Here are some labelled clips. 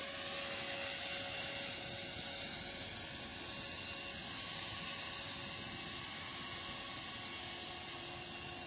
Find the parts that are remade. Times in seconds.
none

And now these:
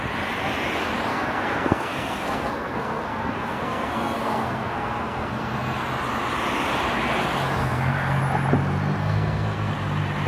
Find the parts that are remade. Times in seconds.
1.1-5.9 (codec, SNAC); 7.6-8.2; 9.0-9.7

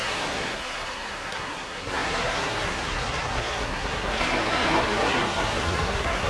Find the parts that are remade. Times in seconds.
0.0-6.3 (codec, SNAC)

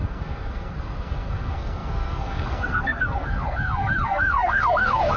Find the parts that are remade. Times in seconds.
0.0-5.2 (codec, SNAC)

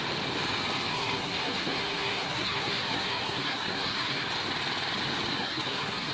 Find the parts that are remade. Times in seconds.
0.9-4.3 (codec, SNAC); 5.3-6.1

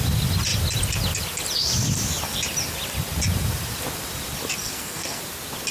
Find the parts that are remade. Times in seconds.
4.6-5.2 (codec, SNAC)